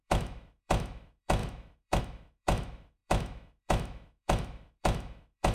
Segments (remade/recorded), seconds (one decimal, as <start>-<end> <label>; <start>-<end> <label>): 0.0-5.5 remade